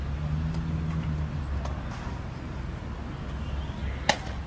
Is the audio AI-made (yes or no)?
no